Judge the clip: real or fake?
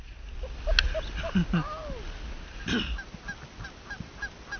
real